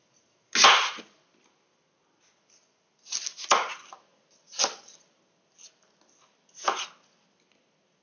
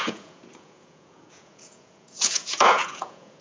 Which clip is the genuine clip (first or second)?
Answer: first